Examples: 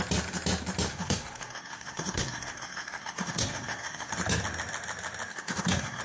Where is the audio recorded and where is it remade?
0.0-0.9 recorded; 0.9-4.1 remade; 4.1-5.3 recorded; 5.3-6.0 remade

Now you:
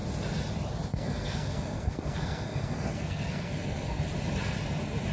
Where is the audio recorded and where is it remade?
0.0-0.9 recorded; 0.9-4.0 remade; 4.0-5.1 recorded